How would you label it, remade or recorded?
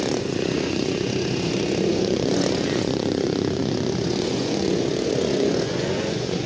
remade